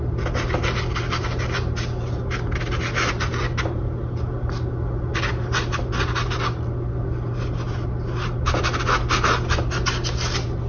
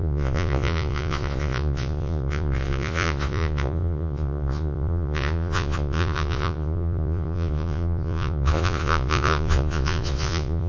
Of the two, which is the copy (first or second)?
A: second